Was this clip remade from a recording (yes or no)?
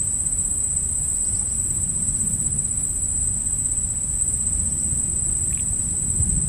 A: no